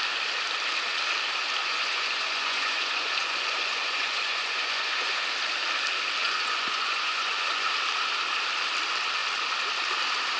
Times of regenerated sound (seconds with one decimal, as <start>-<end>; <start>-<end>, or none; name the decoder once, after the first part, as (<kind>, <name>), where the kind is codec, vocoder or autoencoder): 1.6-5.2 (vocoder, Vocos); 6.2-7.7